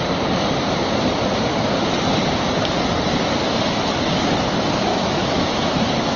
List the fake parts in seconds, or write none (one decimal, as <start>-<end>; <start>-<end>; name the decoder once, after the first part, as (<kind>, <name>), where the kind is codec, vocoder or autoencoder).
4.9-6.2 (autoencoder, DAC-VAE)